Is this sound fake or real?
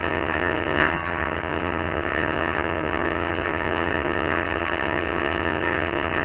fake